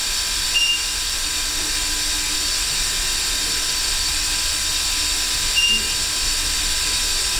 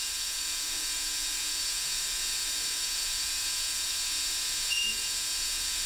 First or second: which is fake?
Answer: second